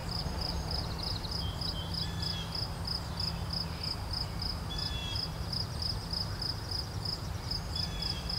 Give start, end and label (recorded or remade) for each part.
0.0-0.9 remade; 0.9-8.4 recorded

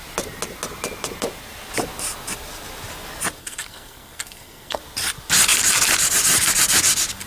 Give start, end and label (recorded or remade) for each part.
0.0-3.4 recorded; 3.4-4.8 remade; 4.8-7.3 recorded

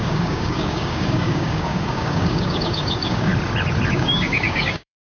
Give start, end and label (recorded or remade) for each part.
0.0-3.3 remade; 3.3-3.9 recorded; 3.9-5.2 remade

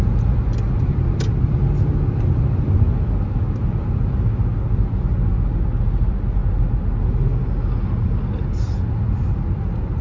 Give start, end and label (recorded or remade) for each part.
0.0-10.0 recorded

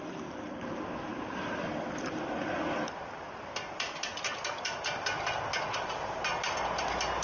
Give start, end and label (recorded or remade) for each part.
0.0-7.2 recorded

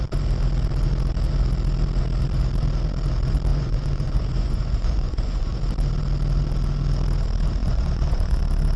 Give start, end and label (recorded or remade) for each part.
0.0-3.5 recorded; 3.5-5.6 remade; 5.6-7.6 recorded; 7.6-8.4 remade; 8.4-8.8 recorded